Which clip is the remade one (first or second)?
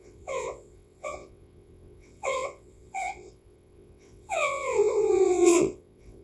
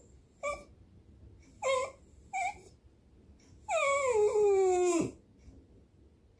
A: first